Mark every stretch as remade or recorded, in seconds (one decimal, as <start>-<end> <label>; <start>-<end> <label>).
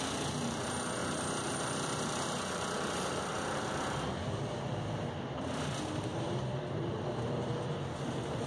0.0-1.0 recorded; 1.0-3.6 remade; 3.6-6.1 recorded; 6.1-7.7 remade; 7.7-8.5 recorded